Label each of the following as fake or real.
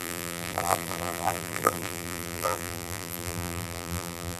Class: fake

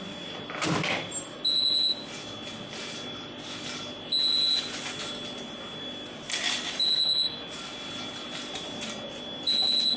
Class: real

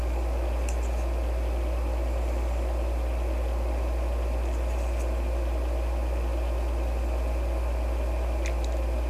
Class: real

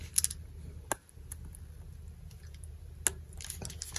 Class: real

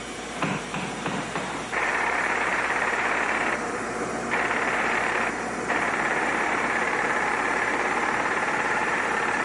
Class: fake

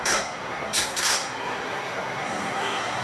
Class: fake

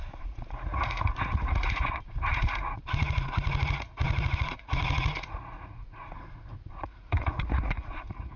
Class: fake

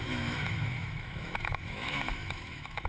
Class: fake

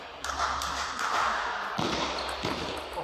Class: real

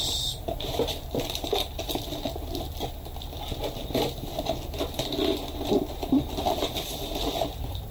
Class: real